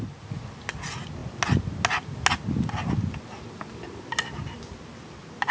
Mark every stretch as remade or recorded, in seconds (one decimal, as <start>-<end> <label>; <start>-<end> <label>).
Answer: 0.0-5.5 recorded